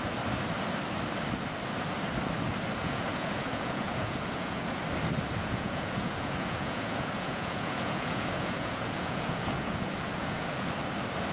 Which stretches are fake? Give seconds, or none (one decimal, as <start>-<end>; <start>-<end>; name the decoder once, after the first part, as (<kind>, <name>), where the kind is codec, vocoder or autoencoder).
2.8-4.8 (vocoder, Vocos); 5.4-10.7